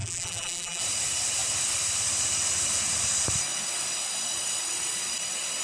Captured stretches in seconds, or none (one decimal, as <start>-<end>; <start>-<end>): 0.8-5.6